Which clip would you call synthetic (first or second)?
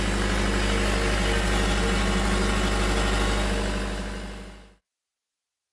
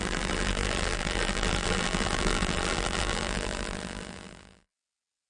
second